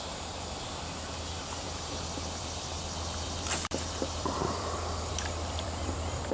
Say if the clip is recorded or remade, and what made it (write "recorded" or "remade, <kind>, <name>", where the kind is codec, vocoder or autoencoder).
remade, vocoder, BigVGAN v2